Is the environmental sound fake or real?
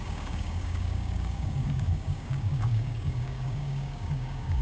fake